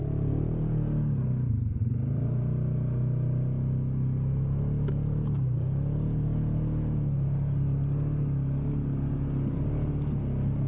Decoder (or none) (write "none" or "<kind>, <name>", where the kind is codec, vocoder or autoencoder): none